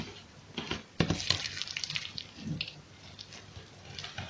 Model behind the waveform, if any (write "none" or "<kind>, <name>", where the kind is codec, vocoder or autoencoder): none